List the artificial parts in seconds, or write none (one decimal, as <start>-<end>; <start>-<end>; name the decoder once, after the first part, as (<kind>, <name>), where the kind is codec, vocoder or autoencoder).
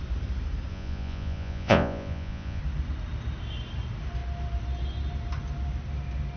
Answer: 0.7-2.6 (vocoder, Vocos)